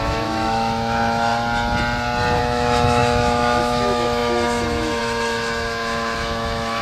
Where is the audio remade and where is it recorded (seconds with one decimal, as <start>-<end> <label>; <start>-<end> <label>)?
0.0-1.3 remade; 1.3-2.4 recorded; 2.4-6.8 remade

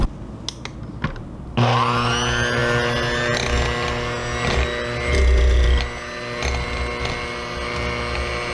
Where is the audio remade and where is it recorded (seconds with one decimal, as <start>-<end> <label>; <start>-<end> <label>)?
0.0-8.5 recorded

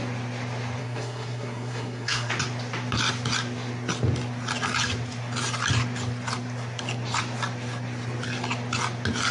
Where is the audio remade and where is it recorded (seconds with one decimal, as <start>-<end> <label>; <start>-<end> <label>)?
0.0-0.8 recorded; 0.8-2.3 remade; 2.3-9.3 recorded